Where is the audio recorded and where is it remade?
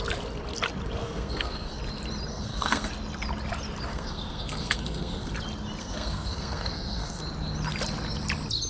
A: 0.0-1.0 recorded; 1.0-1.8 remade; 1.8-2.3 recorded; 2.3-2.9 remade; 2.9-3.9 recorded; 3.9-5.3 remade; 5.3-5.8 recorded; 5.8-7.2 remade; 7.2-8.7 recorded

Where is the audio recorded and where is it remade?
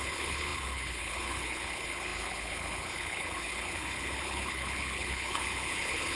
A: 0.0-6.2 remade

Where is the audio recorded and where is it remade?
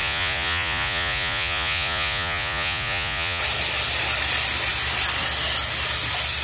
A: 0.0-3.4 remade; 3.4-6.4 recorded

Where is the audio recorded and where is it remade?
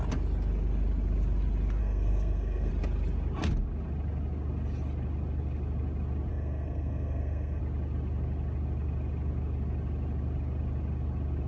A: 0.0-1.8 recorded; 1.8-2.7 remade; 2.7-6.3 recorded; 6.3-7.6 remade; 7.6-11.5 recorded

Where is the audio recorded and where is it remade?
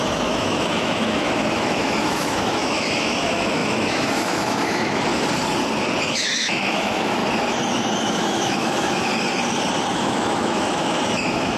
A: 0.0-5.1 remade; 5.1-6.1 recorded; 6.1-7.2 remade; 7.2-8.0 recorded; 8.0-9.1 remade; 9.1-9.9 recorded; 9.9-11.6 remade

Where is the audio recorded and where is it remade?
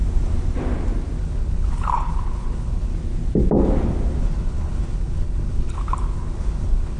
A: 0.0-1.2 recorded; 1.2-2.9 remade; 2.9-4.2 recorded; 4.2-7.0 remade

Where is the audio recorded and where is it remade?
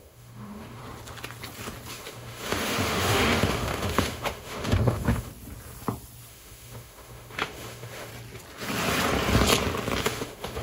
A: 0.0-0.8 remade; 0.8-1.9 recorded; 1.9-5.3 remade; 5.3-6.3 recorded; 6.3-8.1 remade; 8.1-10.0 recorded; 10.0-10.6 remade